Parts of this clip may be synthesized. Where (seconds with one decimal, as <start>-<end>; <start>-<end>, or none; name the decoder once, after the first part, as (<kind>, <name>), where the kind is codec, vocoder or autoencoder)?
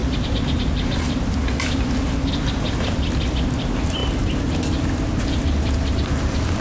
0.0-0.6 (vocoder, BigVGAN v2)